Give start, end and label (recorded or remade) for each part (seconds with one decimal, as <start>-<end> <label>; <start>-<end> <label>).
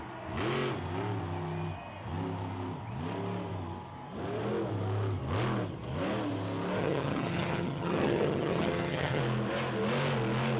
0.0-6.8 recorded; 6.8-9.2 remade; 9.2-10.6 recorded